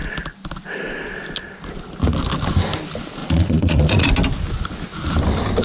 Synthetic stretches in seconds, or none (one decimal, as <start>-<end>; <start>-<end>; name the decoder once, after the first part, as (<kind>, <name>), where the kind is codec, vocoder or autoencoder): 3.2-4.1 (vocoder, Vocos)